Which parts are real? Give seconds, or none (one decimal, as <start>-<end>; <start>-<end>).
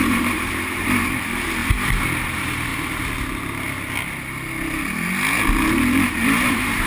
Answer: 2.7-5.7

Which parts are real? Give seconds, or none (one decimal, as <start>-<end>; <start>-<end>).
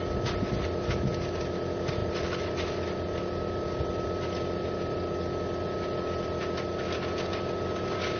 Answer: 0.0-8.2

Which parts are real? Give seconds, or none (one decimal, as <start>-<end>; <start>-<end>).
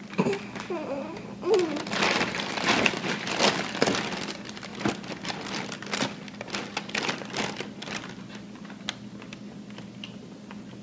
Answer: 0.0-10.8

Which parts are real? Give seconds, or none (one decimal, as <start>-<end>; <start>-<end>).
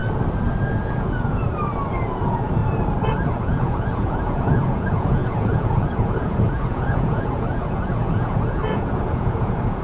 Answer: 0.0-0.8; 1.4-2.2; 2.6-3.1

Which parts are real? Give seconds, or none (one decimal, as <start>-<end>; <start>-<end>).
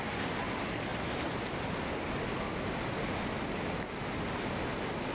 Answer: 0.0-5.1